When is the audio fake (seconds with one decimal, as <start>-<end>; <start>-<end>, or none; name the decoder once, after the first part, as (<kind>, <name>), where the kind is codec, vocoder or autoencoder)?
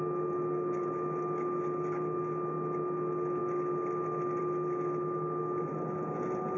none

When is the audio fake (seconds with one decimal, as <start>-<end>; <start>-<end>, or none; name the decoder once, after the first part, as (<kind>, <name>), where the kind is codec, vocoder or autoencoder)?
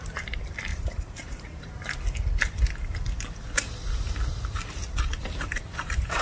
0.7-1.6 (vocoder, BigVGAN v2); 5.2-6.2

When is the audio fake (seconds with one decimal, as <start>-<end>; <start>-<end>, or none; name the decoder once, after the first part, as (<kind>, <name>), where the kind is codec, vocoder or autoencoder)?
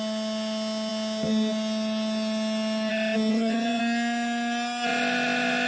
3.3-3.8 (vocoder, HiFi-GAN)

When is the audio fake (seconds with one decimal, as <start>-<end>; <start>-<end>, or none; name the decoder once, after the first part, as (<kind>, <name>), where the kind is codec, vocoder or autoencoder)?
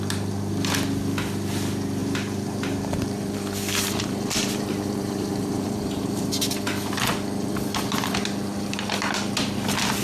2.0-6.3 (vocoder, BigVGAN v2)